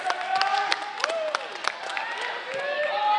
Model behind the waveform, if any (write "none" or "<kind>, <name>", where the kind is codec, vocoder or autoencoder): none